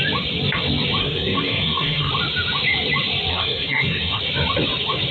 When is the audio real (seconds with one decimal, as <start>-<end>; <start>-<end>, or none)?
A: 0.0-1.0; 2.1-3.3; 4.2-5.1